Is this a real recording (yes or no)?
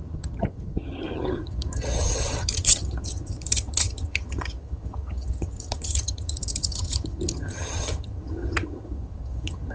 no